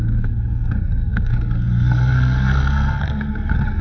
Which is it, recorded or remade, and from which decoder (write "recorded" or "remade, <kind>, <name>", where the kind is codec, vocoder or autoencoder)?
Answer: remade, codec, SNAC